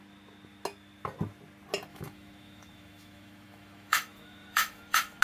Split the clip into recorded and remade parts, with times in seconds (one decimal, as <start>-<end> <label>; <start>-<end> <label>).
0.0-1.9 recorded; 1.9-5.2 remade